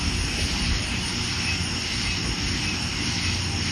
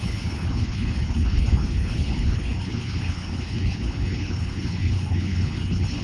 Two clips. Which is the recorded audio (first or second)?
first